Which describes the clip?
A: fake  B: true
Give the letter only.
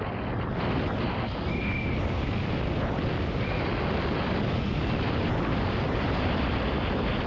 B